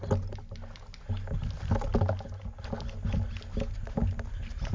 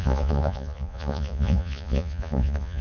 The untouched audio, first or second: first